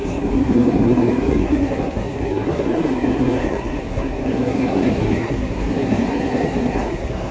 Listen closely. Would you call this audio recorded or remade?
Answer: remade